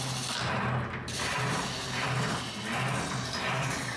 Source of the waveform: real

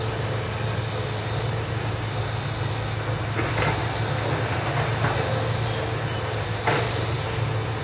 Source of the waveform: real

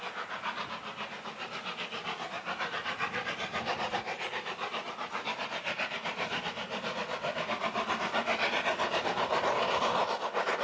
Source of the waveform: fake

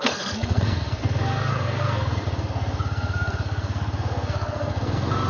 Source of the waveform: fake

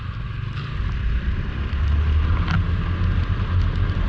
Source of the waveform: real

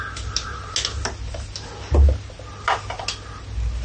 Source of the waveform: real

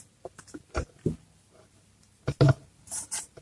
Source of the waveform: real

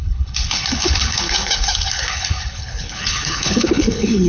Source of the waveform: fake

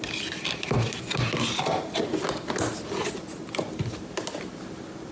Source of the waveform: real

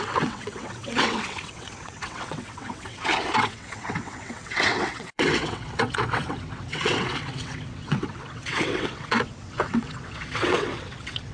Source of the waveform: fake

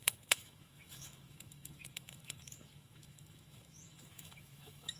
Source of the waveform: fake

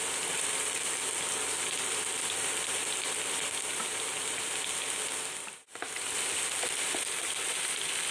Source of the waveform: real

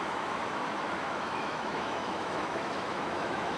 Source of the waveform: fake